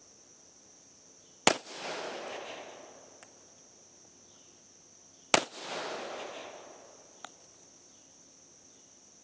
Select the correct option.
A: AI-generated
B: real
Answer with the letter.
B